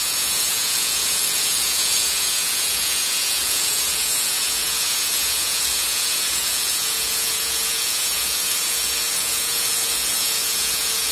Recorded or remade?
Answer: remade